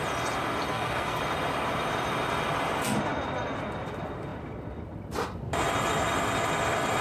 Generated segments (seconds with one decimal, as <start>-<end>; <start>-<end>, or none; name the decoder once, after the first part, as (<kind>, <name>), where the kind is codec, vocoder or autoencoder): 0.7-1.2 (codec, SNAC)